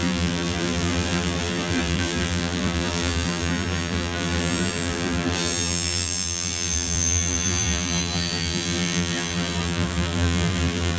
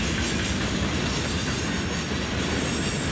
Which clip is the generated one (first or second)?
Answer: first